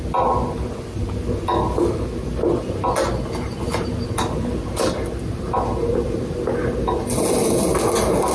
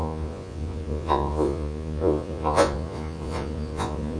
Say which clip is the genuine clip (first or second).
first